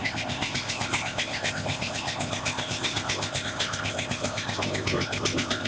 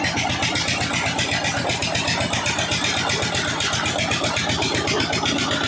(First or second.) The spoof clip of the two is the first